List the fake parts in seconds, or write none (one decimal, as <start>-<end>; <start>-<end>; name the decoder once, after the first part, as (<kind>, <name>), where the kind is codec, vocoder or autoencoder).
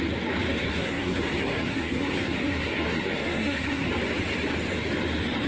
0.6-3.9 (codec, SNAC)